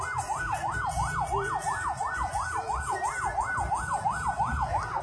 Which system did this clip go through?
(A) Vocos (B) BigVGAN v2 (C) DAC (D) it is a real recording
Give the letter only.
D